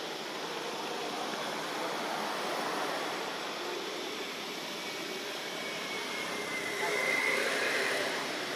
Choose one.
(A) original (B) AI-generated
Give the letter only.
B